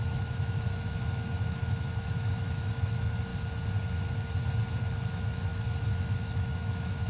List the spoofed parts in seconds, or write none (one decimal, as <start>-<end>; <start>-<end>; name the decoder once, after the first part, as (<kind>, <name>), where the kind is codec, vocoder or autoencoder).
0.0-3.3 (autoencoder, DAC-VAE); 4.9-7.1